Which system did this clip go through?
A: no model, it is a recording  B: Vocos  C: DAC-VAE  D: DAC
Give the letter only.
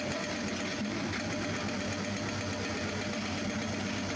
A